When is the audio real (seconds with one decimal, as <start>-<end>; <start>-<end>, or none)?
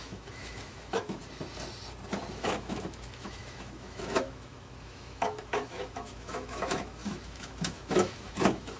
1.2-2.3